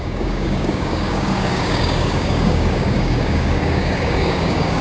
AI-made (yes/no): yes